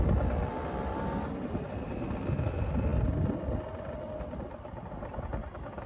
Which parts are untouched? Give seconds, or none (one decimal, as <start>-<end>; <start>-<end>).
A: 0.0-5.9